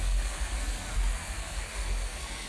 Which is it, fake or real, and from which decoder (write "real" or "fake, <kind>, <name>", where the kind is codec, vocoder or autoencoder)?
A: fake, codec, SNAC